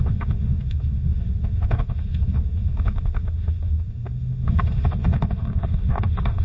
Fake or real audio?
fake